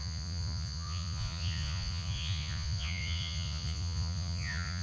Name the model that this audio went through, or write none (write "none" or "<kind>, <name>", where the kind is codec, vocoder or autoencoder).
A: vocoder, Vocos